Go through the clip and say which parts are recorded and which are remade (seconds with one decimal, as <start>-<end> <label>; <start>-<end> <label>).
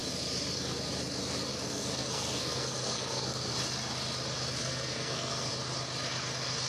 0.0-1.5 recorded; 1.5-3.5 remade; 3.5-4.6 recorded; 4.6-5.5 remade; 5.5-6.7 recorded